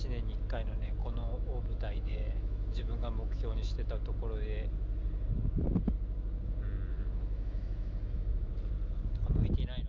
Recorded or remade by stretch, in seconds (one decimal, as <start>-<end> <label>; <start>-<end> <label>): 0.0-1.0 recorded; 1.0-3.9 remade; 3.9-6.9 recorded; 6.9-8.5 remade; 8.5-9.9 recorded